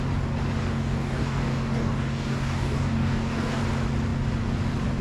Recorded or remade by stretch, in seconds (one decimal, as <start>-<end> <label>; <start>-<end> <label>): 0.0-0.6 recorded; 0.6-3.6 remade; 3.6-5.0 recorded